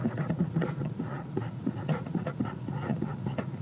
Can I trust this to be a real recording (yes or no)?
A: no